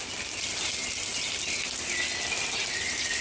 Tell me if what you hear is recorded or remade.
recorded